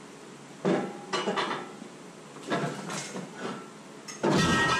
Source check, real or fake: real